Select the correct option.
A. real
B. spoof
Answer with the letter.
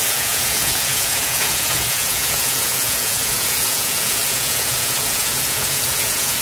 B